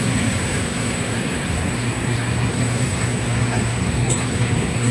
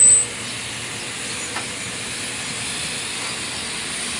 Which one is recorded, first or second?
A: second